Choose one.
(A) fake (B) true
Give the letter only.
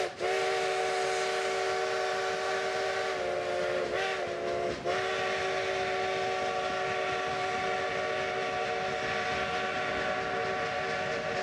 B